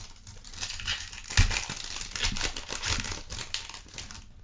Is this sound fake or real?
real